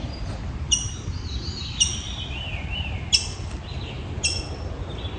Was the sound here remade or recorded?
recorded